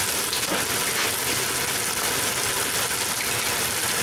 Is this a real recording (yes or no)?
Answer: yes